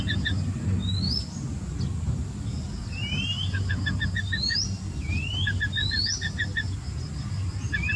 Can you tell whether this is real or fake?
real